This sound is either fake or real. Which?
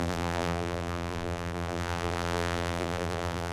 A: fake